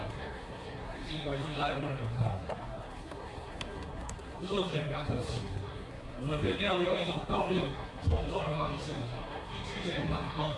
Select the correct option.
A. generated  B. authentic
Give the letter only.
A